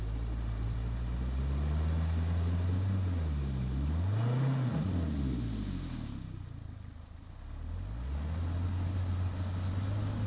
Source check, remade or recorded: recorded